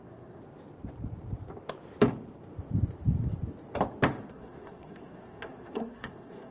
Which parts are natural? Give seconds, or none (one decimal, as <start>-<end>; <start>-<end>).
0.4-4.3